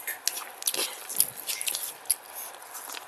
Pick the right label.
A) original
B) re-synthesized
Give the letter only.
A